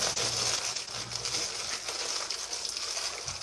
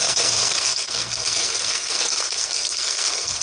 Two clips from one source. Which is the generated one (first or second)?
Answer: second